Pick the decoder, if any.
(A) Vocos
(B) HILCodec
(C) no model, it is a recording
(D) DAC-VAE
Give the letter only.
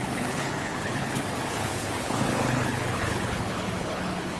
B